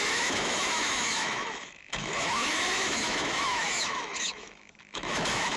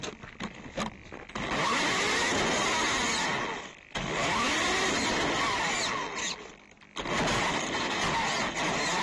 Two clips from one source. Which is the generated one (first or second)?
first